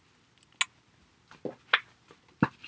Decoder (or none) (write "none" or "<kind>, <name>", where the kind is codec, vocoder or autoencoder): none